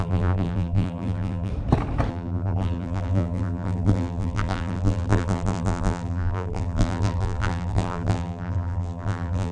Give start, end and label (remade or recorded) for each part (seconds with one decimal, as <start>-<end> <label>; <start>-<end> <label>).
0.0-1.5 remade; 1.5-2.1 recorded; 2.1-9.5 remade